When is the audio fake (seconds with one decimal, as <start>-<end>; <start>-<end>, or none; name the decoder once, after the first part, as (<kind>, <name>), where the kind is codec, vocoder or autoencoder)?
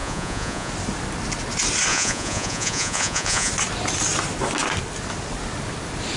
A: 0.0-0.7 (vocoder, Vocos); 1.9-3.5